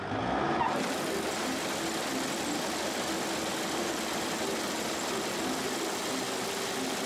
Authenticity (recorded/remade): recorded